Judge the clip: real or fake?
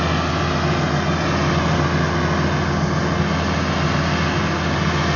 real